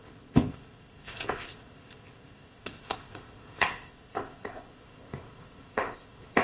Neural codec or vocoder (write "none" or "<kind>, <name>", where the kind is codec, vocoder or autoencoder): codec, ZipCodec